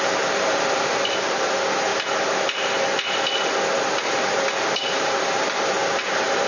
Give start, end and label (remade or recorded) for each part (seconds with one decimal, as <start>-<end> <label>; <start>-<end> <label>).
0.0-1.9 remade; 1.9-3.8 recorded; 3.8-6.5 remade